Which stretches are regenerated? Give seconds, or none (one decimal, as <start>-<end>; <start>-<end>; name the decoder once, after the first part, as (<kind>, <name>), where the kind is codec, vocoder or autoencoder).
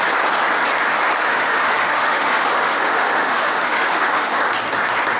1.3-4.4 (autoencoder, DAC-VAE)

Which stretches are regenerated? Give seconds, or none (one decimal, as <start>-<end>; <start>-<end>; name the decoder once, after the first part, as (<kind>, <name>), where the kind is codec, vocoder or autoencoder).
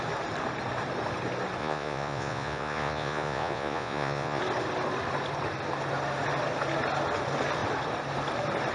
1.6-4.4 (vocoder, Vocos)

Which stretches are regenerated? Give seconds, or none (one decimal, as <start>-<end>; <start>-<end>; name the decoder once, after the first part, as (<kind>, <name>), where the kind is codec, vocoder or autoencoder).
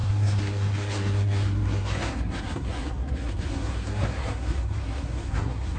0.0-5.8 (codec, SNAC)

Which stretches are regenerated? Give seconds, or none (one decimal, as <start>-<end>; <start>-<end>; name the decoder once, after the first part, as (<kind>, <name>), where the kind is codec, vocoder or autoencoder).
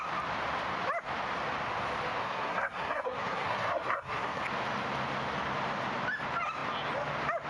2.2-4.4 (codec, SNAC)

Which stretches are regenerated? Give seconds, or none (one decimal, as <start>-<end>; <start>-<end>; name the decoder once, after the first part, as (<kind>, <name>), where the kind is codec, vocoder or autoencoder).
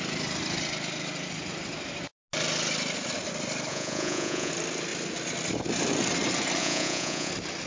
3.7-4.5 (vocoder, Vocos); 6.6-7.3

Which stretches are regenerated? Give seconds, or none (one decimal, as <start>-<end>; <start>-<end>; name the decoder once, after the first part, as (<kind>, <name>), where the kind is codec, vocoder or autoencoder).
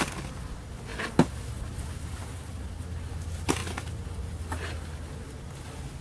none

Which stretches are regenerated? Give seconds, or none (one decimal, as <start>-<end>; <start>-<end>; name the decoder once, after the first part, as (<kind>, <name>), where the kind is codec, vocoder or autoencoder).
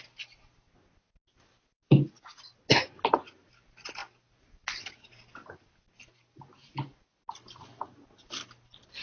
none